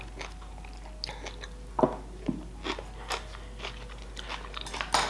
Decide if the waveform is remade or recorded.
recorded